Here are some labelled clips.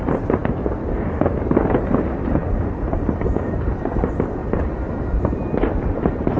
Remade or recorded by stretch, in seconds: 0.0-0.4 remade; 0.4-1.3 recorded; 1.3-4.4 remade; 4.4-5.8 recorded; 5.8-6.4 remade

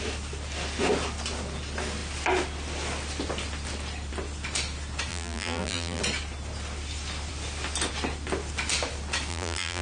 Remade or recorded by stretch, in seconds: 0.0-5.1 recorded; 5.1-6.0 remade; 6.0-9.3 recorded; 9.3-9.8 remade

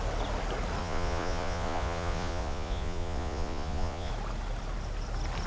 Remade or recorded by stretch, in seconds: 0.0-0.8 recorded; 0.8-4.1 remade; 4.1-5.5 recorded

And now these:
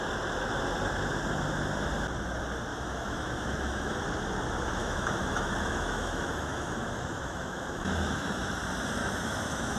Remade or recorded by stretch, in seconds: 0.0-2.7 recorded; 2.7-4.0 remade; 4.0-4.8 recorded; 4.8-8.6 remade; 8.6-9.0 recorded; 9.0-9.8 remade

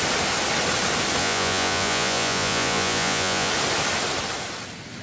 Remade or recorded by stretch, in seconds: 0.0-1.2 recorded; 1.2-3.5 remade; 3.5-5.0 recorded

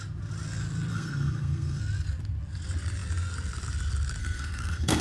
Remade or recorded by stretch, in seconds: 0.0-0.9 recorded; 0.9-1.8 remade; 1.8-4.2 recorded; 4.2-5.0 remade